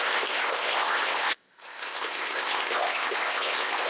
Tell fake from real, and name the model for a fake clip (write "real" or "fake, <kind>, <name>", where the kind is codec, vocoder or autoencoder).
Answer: fake, codec, ZipCodec